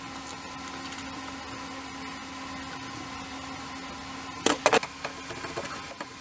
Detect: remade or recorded recorded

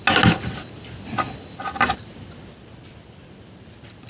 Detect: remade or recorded recorded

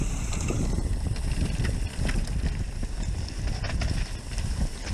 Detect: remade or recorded recorded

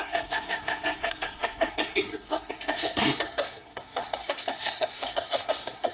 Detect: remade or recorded remade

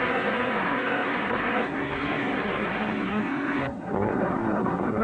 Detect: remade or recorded remade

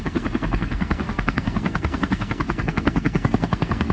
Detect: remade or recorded remade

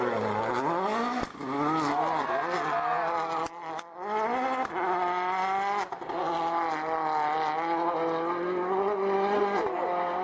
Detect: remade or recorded recorded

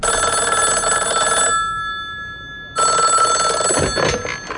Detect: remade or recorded recorded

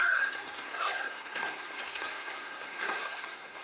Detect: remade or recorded remade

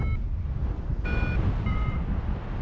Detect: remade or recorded recorded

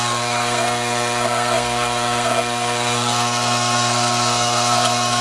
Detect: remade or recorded remade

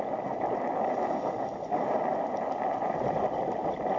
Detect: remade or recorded recorded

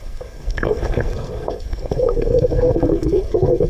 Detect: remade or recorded remade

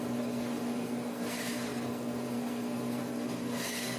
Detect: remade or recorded remade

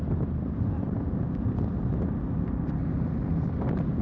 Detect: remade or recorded recorded